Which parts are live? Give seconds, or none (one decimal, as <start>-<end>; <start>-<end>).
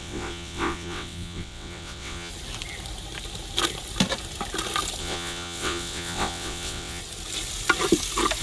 2.3-5.0; 7.0-8.4